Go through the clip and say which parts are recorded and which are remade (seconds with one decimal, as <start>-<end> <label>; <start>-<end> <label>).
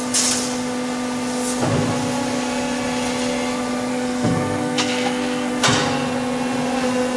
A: 0.0-3.9 recorded; 3.9-5.5 remade; 5.5-7.2 recorded